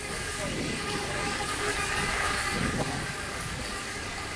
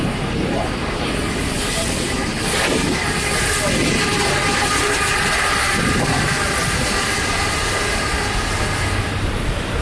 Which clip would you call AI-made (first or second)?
first